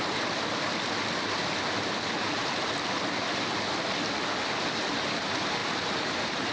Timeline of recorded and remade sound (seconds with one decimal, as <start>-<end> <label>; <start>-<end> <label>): 0.0-5.6 recorded; 5.6-6.5 remade